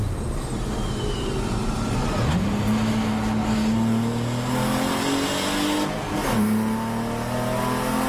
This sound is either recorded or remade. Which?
recorded